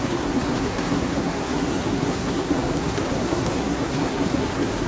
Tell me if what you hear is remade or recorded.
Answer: remade